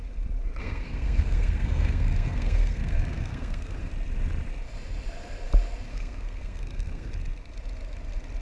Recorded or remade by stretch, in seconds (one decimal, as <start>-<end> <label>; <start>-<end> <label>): 0.0-0.6 recorded; 0.6-3.9 remade; 3.9-5.9 recorded; 5.9-7.1 remade; 7.1-8.4 recorded